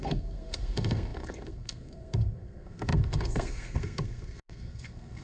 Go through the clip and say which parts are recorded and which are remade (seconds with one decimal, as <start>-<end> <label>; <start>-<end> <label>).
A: 0.0-5.2 remade